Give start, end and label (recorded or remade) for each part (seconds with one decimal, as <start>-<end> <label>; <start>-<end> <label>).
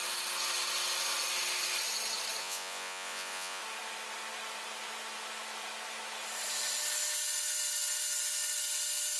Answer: 0.0-2.4 recorded; 2.4-3.6 remade; 3.6-9.2 recorded